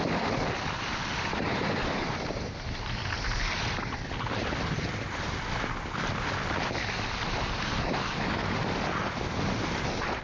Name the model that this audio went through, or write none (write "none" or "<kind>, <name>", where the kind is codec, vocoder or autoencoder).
none